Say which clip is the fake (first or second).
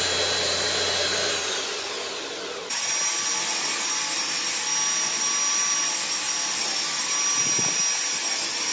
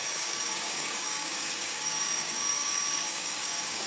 second